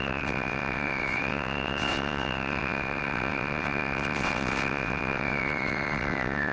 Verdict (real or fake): fake